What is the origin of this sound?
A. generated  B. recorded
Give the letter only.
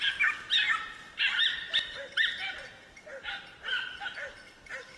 B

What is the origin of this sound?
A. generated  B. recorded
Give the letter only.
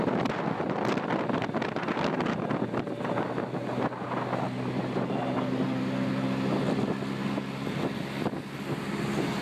B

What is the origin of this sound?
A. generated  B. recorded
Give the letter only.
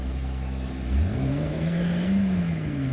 A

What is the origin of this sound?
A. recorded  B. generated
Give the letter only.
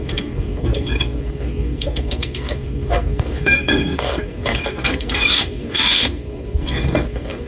B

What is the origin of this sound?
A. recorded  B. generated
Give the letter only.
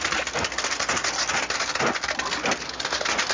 A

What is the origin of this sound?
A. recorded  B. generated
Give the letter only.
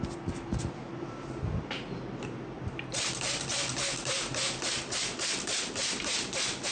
A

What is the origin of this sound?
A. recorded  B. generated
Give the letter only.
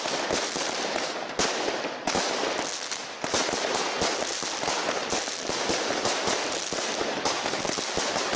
A